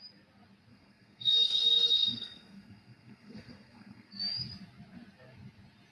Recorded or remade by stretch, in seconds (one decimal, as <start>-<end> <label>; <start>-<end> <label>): 0.0-0.7 recorded; 0.7-4.2 remade; 4.2-5.9 recorded